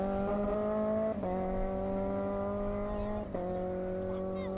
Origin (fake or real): real